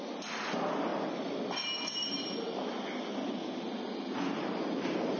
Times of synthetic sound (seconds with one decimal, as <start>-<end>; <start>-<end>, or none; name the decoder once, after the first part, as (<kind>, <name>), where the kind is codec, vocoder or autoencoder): none